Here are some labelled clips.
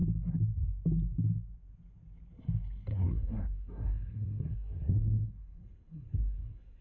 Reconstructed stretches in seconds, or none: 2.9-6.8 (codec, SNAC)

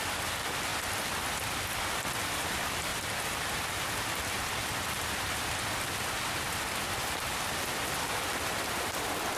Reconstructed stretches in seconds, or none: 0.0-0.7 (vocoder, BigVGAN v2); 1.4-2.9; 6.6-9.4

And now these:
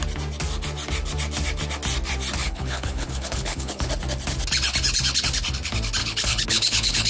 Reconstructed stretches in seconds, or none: 2.4-3.9 (codec, HILCodec); 6.0-7.1

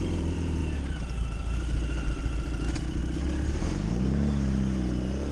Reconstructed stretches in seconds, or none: 0.0-3.0 (vocoder, BigVGAN v2); 3.9-5.3

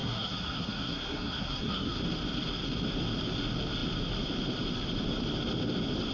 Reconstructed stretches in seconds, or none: 0.0-2.0 (codec, SNAC)

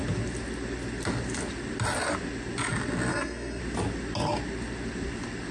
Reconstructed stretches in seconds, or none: 3.1-3.6 (codec, SNAC)

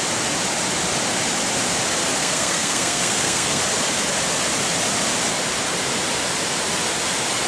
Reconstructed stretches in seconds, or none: 2.2-3.6 (codec, SNAC)

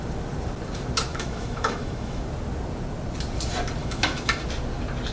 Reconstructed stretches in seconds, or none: 1.1-2.2 (autoencoder, DAC-VAE); 3.8-4.3